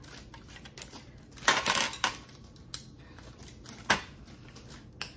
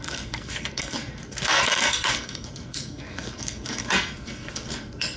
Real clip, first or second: first